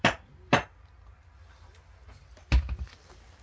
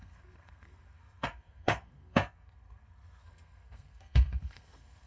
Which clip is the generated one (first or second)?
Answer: second